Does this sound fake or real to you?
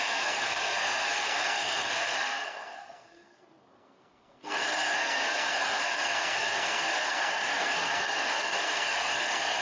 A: fake